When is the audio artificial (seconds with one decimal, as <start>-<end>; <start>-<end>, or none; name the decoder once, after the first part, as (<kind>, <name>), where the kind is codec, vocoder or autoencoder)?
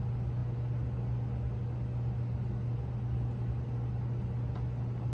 none